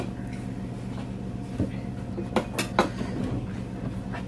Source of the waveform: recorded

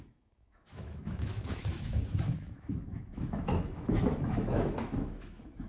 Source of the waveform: remade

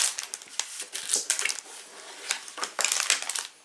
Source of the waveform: recorded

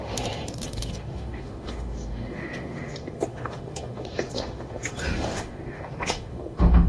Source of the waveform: remade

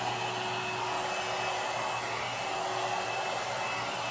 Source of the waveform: recorded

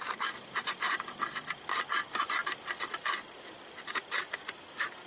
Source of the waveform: recorded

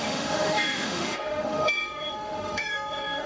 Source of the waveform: remade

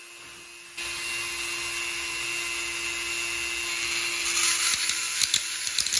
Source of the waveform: recorded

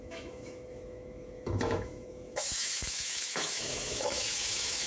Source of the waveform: remade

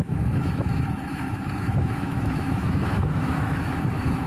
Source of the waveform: remade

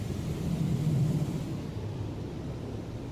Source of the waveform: recorded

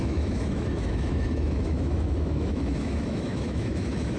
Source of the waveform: remade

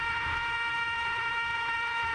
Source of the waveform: remade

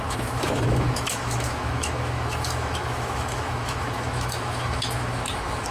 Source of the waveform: remade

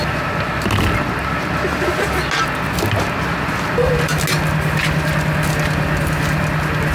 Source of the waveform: recorded